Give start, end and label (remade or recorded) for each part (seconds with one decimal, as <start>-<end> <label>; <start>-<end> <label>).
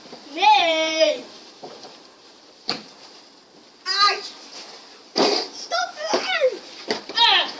0.0-0.5 recorded; 0.5-2.9 remade; 2.9-7.6 recorded